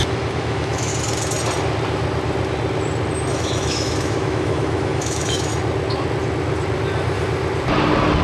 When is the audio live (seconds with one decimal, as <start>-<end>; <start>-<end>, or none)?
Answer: 0.9-3.3; 5.5-8.2